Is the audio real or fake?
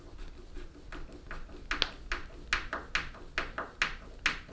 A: real